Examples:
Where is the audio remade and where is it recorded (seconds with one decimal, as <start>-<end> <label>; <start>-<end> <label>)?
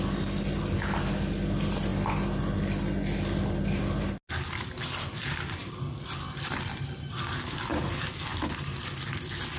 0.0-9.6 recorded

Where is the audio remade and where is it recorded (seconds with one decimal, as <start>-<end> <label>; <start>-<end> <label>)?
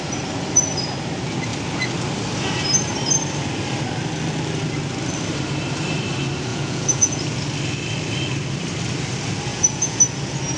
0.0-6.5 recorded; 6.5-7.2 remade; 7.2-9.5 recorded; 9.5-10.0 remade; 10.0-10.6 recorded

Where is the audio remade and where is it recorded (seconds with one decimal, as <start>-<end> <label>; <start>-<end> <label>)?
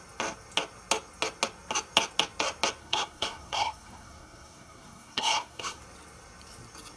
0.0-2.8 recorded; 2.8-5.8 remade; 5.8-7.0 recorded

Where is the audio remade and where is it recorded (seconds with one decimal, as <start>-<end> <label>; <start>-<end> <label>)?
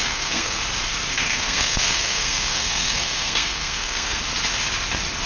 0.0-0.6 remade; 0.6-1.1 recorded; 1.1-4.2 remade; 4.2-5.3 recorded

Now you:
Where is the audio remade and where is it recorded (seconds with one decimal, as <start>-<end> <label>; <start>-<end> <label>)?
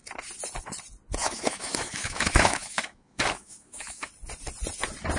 0.0-1.2 recorded; 1.2-4.1 remade; 4.1-5.2 recorded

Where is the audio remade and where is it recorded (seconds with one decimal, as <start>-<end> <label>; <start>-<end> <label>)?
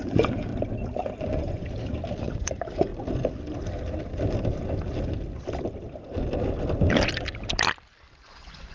0.0-0.5 remade; 0.5-1.2 recorded; 1.2-1.6 remade; 1.6-2.2 recorded; 2.2-2.9 remade; 2.9-8.1 recorded; 8.1-8.7 remade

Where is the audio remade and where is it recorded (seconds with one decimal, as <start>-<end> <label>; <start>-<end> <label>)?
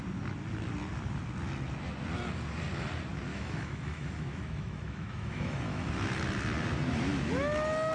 0.0-3.3 recorded; 3.3-5.9 remade; 5.9-7.9 recorded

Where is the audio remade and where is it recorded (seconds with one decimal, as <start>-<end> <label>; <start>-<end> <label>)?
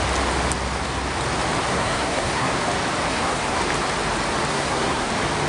0.0-1.7 recorded; 1.7-2.5 remade; 2.5-3.1 recorded; 3.1-3.6 remade; 3.6-4.5 recorded; 4.5-5.1 remade; 5.1-5.5 recorded